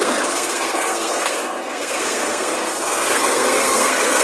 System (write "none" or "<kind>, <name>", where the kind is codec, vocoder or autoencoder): codec, SNAC